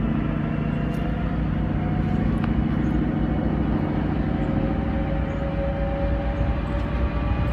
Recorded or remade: recorded